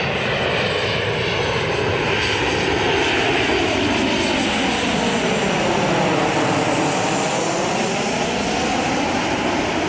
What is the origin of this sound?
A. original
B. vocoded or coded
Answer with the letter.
A